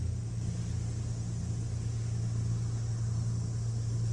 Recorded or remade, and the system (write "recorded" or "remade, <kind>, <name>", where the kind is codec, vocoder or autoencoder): recorded